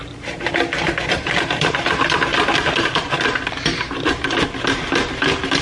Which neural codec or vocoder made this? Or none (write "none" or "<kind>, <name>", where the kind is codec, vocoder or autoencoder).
none